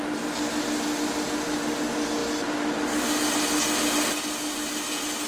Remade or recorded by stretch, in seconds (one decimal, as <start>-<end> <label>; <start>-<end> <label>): 0.0-5.3 recorded